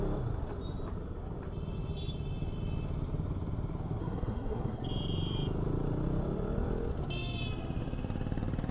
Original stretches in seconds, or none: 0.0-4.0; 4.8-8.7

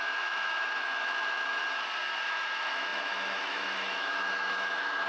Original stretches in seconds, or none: 1.6-2.2